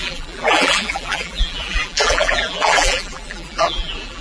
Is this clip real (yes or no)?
no